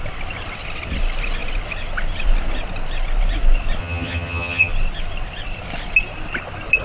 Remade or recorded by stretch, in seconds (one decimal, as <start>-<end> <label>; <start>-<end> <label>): 0.0-3.8 recorded; 3.8-4.7 remade; 4.7-6.8 recorded

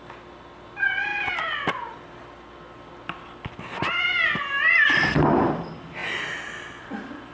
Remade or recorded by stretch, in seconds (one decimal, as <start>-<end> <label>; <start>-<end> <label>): 0.0-7.3 recorded

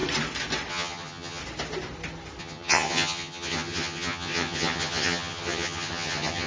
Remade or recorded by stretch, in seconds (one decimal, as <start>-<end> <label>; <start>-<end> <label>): 0.0-0.7 recorded; 0.7-1.4 remade; 1.4-2.4 recorded; 2.4-6.5 remade

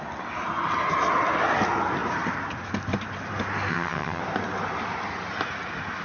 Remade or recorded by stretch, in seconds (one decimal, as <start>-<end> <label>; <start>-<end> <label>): 0.0-3.7 recorded; 3.7-4.2 remade; 4.2-6.0 recorded

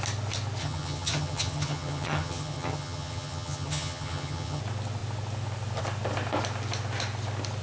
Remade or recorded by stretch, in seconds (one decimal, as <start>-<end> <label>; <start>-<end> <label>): 0.0-0.6 recorded; 0.6-4.6 remade; 4.6-7.6 recorded

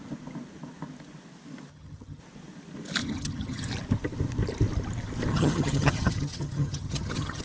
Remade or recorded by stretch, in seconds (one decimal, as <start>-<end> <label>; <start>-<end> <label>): 0.0-1.7 recorded; 1.7-2.2 remade; 2.2-3.0 recorded; 3.0-3.7 remade; 3.7-5.3 recorded; 5.3-7.4 remade

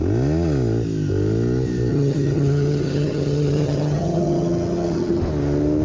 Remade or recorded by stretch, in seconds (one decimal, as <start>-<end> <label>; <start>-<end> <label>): 0.0-1.9 recorded; 1.9-5.2 remade; 5.2-5.8 recorded

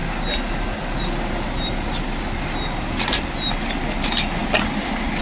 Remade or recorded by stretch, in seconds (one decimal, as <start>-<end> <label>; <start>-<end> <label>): 0.0-5.2 recorded